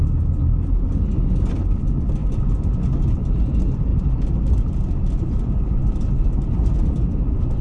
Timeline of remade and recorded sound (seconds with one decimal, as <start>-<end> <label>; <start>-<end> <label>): 0.0-7.6 recorded